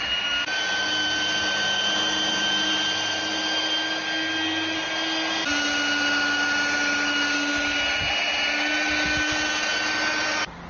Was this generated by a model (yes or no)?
no